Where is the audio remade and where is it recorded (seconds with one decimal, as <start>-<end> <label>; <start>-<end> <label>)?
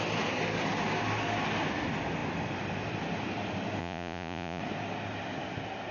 0.0-3.8 recorded; 3.8-4.6 remade; 4.6-5.9 recorded